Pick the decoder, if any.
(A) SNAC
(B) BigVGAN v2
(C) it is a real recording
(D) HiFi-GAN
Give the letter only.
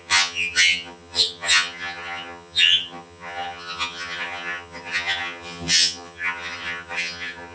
D